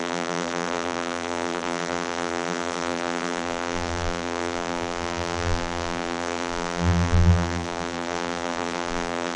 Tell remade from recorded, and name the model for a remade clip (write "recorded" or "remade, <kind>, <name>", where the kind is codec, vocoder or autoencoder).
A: remade, vocoder, BigVGAN v2